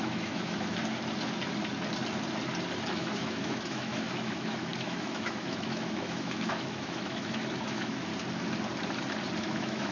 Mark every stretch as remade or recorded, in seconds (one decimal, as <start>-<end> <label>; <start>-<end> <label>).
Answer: 0.0-0.8 remade; 0.8-2.9 recorded; 2.9-8.1 remade; 8.1-9.4 recorded; 9.4-9.9 remade